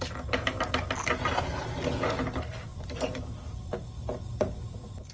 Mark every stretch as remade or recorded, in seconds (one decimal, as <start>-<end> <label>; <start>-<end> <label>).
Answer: 0.0-5.1 recorded